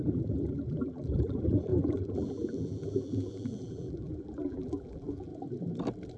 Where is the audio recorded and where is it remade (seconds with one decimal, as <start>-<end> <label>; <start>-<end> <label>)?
0.0-5.3 remade; 5.3-6.2 recorded